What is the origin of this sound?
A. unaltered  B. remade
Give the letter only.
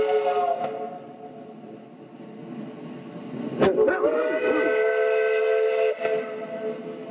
A